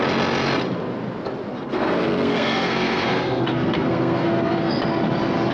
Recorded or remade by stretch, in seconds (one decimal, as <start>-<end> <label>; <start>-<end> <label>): 0.0-1.5 recorded; 1.5-4.8 remade; 4.8-5.5 recorded